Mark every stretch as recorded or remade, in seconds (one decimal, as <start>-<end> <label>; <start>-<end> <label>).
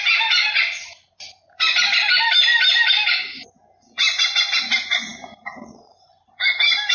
0.0-6.9 recorded